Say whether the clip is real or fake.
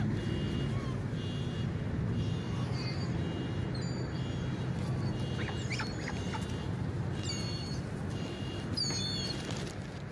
real